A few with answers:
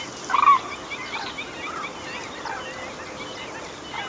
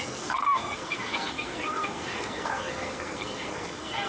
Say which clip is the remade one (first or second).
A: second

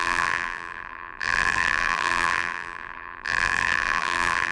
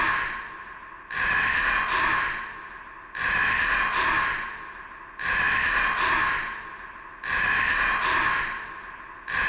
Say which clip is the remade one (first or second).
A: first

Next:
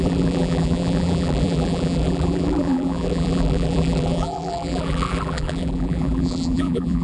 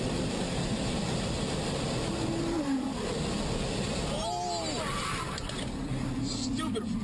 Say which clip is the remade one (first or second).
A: first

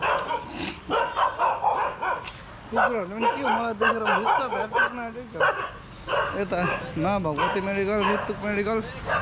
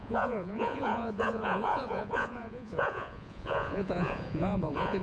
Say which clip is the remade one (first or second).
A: second